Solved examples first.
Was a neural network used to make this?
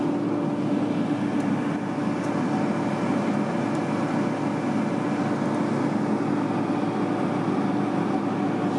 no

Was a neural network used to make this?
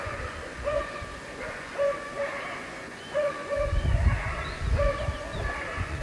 yes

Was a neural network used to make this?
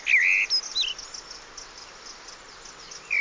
no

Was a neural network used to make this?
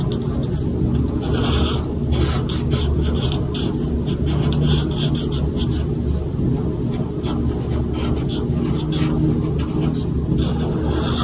no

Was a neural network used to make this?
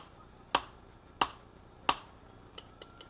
no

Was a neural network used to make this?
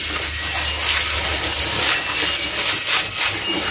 no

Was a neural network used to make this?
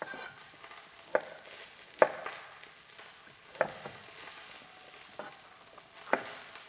no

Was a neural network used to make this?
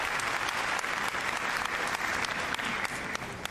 no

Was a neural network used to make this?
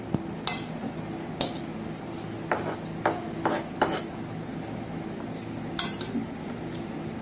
no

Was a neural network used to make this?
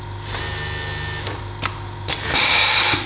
no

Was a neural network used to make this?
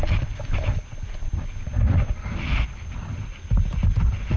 no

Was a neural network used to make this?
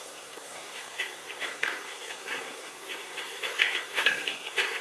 yes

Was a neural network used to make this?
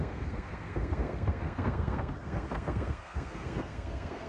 yes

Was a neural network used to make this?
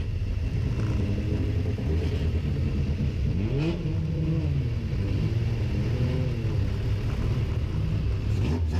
no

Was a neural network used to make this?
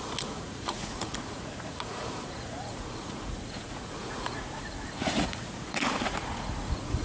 yes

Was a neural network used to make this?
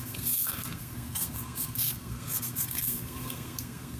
yes